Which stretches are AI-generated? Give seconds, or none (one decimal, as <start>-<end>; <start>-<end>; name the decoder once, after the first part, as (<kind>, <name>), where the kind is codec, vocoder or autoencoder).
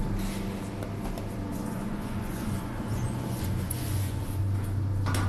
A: 1.5-4.4 (vocoder, Vocos)